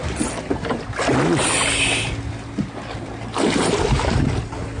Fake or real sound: real